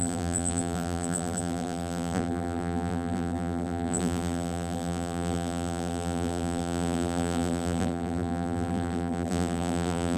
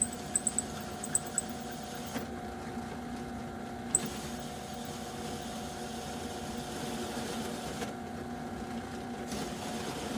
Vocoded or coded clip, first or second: first